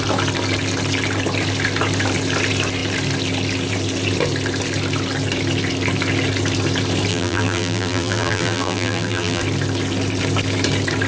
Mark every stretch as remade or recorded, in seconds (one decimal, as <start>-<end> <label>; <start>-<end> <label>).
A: 0.0-7.1 recorded; 7.1-9.4 remade; 9.4-11.1 recorded